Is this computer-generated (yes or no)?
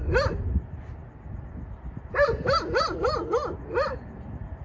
no